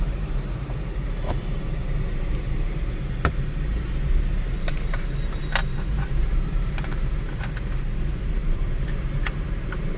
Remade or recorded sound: remade